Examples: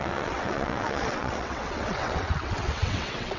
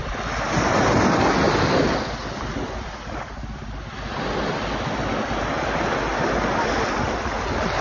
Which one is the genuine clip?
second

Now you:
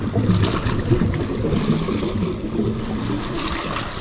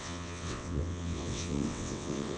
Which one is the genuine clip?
first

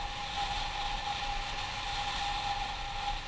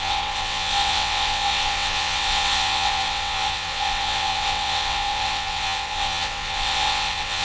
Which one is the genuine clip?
first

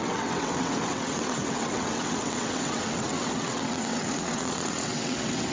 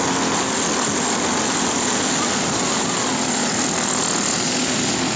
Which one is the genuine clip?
second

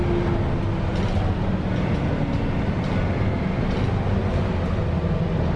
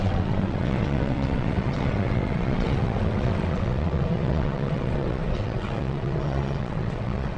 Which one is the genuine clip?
first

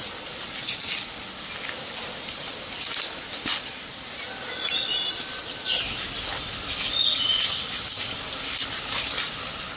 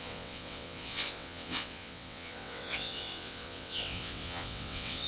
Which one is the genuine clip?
first